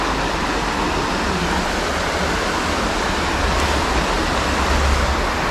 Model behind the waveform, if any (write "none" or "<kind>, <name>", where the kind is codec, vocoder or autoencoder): none